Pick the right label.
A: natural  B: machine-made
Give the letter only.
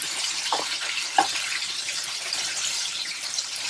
B